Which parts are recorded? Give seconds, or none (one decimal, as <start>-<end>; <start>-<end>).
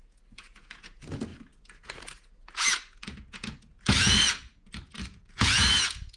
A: none